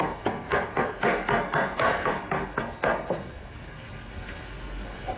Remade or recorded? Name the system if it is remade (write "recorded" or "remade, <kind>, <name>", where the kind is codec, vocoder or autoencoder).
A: remade, codec, SNAC